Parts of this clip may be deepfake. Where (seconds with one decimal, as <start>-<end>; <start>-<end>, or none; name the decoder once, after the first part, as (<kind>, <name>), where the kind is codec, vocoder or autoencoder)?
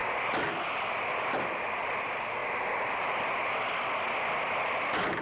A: none